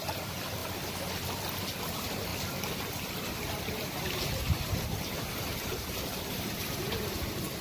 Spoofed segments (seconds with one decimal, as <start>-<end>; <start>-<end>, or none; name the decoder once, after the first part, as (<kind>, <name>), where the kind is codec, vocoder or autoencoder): 0.0-0.6 (vocoder, BigVGAN v2); 1.8-2.3; 3.6-7.6

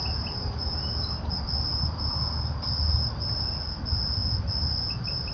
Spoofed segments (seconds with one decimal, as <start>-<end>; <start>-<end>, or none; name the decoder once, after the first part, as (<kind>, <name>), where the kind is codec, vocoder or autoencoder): 0.0-0.9 (vocoder, BigVGAN v2); 1.7-2.2

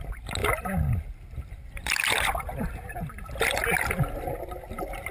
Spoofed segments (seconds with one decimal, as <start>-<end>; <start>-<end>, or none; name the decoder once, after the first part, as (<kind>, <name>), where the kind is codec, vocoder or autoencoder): none

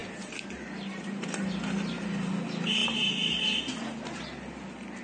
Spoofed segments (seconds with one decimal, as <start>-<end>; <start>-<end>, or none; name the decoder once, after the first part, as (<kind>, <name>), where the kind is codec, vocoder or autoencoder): 0.0-2.3 (vocoder, BigVGAN v2); 2.8-3.6

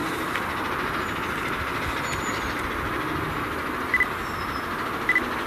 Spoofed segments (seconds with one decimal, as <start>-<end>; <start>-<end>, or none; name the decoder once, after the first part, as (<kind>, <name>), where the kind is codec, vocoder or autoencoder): none

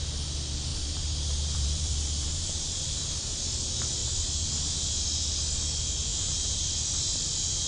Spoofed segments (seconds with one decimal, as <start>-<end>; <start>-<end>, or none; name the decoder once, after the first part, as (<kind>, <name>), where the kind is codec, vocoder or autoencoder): 0.7-2.8 (vocoder, BigVGAN v2); 4.0-4.5; 6.1-6.7